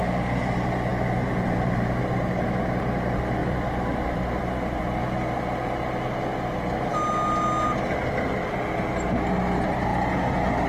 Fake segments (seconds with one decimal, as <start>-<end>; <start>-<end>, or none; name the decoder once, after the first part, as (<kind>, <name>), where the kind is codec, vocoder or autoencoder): 3.4-4.8 (vocoder, BigVGAN v2)